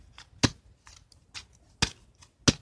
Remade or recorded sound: recorded